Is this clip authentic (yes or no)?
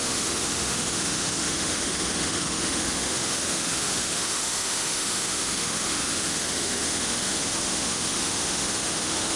no